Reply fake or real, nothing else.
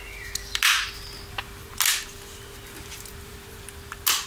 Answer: real